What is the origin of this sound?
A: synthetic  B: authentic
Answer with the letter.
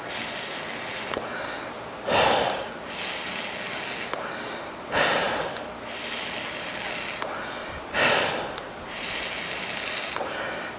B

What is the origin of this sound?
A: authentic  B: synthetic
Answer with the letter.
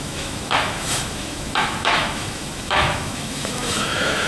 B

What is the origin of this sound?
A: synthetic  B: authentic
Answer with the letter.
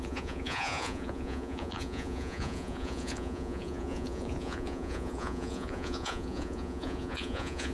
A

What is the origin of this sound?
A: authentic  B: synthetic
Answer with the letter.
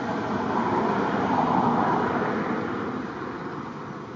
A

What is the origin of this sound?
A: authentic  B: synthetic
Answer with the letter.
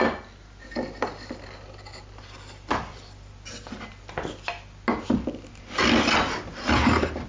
A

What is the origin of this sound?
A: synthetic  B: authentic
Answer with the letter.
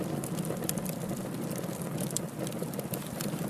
B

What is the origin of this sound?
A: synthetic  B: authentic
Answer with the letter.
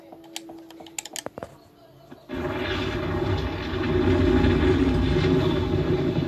B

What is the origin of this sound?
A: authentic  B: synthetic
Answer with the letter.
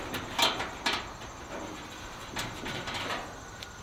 A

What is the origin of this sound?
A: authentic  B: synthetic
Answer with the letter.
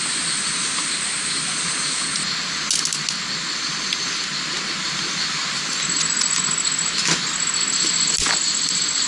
A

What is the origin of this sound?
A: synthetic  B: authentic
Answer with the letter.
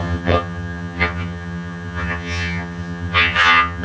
A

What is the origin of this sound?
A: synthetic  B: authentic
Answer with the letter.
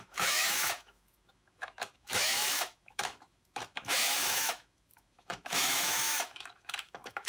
A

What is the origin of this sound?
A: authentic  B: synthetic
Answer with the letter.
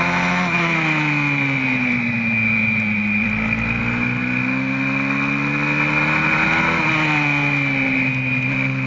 A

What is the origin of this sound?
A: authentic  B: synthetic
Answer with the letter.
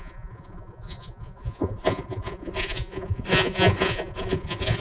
B